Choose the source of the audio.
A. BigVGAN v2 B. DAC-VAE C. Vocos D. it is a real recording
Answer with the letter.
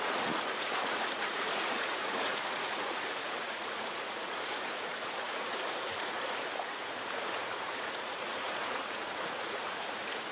C